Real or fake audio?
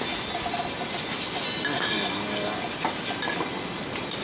real